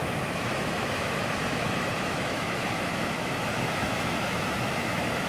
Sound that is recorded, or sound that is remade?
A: remade